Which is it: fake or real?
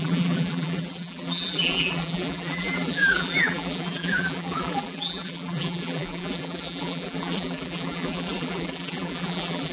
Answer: fake